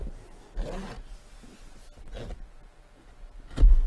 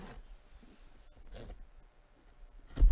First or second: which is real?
first